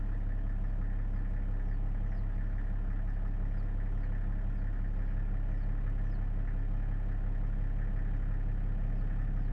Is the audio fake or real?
real